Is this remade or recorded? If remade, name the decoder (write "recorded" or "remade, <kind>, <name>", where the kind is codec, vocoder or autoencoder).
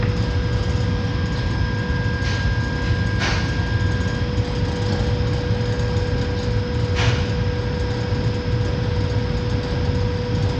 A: recorded